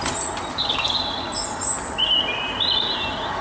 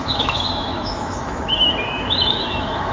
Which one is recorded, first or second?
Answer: first